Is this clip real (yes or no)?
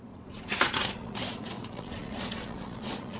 no